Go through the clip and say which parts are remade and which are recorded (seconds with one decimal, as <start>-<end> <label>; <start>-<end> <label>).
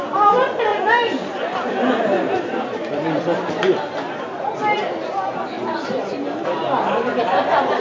0.0-0.7 recorded; 0.7-1.7 remade; 1.7-7.8 recorded